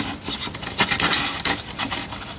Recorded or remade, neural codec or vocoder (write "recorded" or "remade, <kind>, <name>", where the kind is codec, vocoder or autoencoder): recorded